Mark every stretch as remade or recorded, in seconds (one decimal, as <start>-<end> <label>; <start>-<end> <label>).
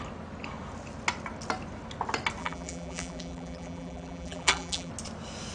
0.0-2.4 recorded; 2.4-4.9 remade; 4.9-5.5 recorded